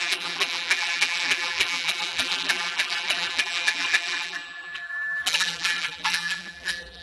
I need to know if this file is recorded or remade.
remade